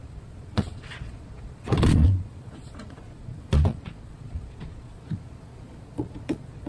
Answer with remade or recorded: remade